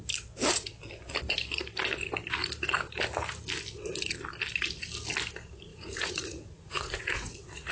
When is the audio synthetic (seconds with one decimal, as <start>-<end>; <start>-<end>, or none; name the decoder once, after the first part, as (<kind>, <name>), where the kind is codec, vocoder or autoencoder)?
5.7-7.7 (vocoder, Vocos)